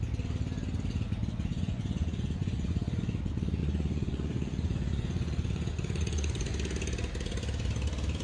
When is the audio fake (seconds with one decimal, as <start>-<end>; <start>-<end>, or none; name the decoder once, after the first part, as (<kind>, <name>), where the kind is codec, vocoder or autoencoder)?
1.5-3.0 (vocoder, Vocos); 3.6-6.5